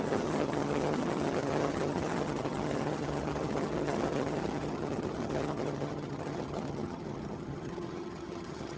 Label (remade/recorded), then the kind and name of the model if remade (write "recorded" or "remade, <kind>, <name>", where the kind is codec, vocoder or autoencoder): remade, vocoder, HiFi-GAN